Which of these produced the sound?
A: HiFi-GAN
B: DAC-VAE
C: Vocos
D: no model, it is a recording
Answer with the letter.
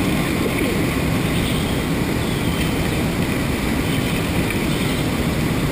D